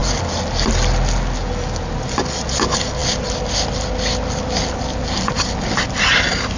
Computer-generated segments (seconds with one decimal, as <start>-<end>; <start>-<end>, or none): none